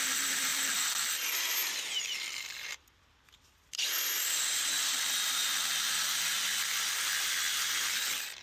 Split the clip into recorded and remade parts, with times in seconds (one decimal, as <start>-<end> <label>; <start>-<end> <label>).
0.0-0.5 recorded; 0.5-4.3 remade; 4.3-8.4 recorded